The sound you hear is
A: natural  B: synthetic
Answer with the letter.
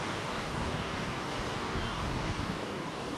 B